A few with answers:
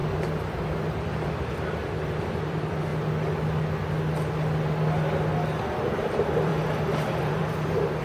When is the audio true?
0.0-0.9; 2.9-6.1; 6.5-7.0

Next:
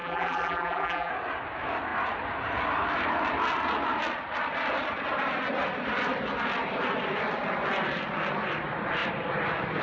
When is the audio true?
1.1-9.8

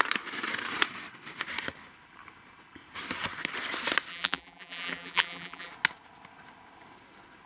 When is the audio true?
0.0-4.1; 5.7-7.5